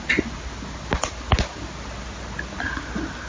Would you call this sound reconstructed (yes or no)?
no